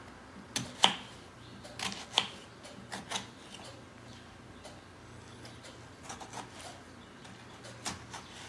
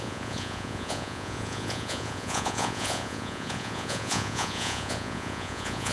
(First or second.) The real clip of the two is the first